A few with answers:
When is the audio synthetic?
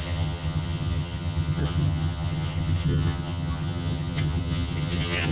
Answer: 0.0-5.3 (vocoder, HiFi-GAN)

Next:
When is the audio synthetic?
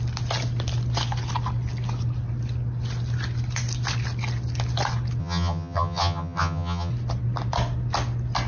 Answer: 5.2-6.9 (vocoder, HiFi-GAN)